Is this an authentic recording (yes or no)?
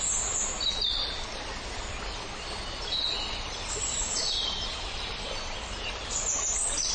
yes